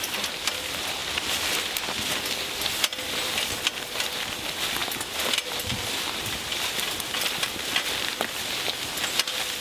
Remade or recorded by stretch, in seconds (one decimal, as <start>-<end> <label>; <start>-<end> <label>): 0.0-4.8 recorded; 4.8-6.6 remade; 6.6-9.6 recorded